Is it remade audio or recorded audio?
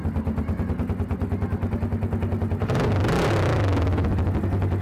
recorded